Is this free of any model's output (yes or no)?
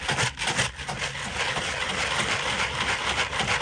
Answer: yes